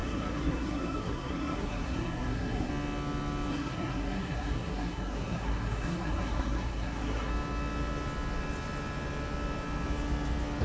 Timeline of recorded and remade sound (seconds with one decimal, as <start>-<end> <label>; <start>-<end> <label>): 0.0-2.7 remade; 2.7-3.5 recorded; 3.5-7.3 remade; 7.3-10.6 recorded